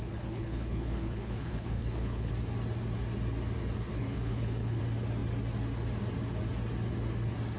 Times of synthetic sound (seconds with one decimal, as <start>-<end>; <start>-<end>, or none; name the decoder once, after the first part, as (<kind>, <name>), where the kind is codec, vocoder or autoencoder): 0.0-2.3 (codec, HILCodec); 3.9-4.8